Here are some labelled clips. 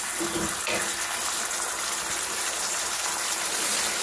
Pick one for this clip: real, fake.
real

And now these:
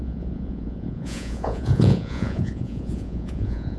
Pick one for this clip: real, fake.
fake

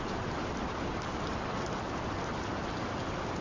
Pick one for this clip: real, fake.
fake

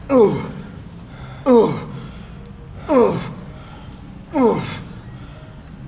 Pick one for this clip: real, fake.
real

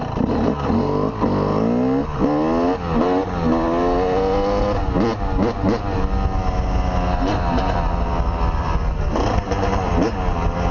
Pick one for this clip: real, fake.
real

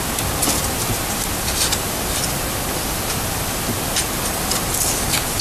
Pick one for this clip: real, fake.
real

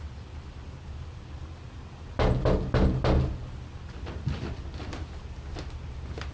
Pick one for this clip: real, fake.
real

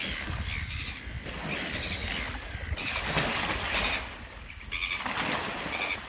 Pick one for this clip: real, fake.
real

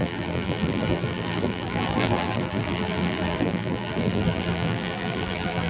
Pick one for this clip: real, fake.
fake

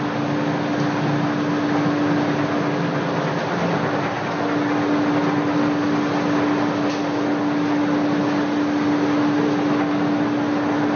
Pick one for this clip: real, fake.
real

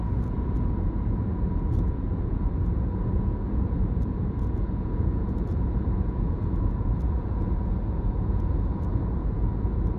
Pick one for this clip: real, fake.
fake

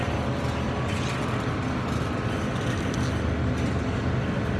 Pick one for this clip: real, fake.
real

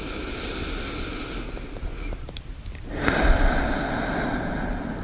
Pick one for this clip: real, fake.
real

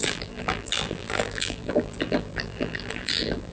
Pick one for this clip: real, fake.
fake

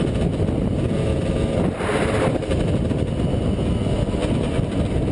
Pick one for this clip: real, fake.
real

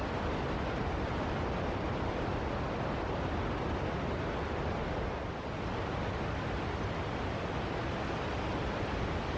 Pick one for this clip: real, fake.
real